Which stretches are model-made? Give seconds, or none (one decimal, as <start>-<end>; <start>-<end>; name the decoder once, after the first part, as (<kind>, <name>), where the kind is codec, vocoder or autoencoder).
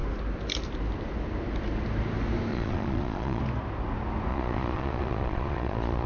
2.5-3.4 (vocoder, Vocos); 4.3-6.1